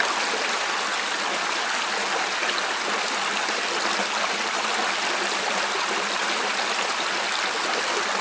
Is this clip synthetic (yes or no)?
no